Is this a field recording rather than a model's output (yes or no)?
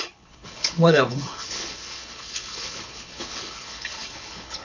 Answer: no